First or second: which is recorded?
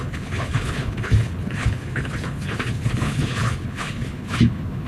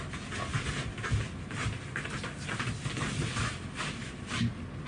second